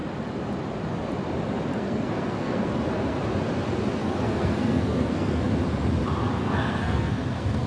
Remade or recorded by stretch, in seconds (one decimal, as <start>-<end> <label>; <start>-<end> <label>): 0.0-1.7 recorded; 1.7-3.2 remade; 3.2-4.0 recorded; 4.0-5.5 remade; 5.5-6.4 recorded; 6.4-7.7 remade

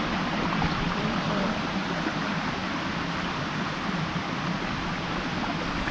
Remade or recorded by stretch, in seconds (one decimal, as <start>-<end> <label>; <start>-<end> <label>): 0.0-1.8 remade; 1.8-2.5 recorded; 2.5-5.9 remade

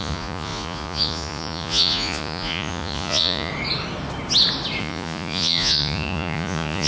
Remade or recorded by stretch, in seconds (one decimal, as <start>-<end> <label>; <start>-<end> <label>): 0.0-3.5 remade; 3.5-4.8 recorded; 4.8-6.9 remade

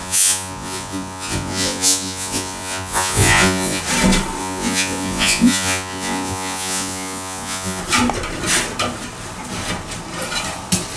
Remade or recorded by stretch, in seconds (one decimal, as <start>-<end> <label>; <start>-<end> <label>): 0.0-3.8 remade; 3.8-4.4 recorded; 4.4-7.8 remade; 7.8-11.0 recorded

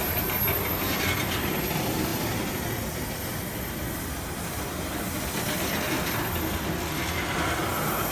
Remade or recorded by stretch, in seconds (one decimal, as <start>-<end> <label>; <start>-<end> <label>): 0.0-8.1 recorded

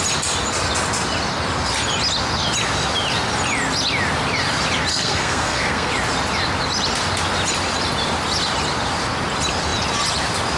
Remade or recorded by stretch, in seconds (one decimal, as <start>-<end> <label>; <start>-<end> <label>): 0.0-4.9 recorded; 4.9-5.9 remade; 5.9-10.6 recorded

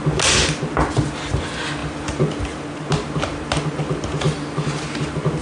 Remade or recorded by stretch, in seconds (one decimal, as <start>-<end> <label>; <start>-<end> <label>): 0.0-5.4 recorded